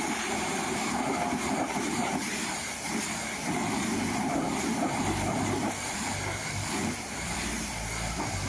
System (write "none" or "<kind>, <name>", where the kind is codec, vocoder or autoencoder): vocoder, BigVGAN v2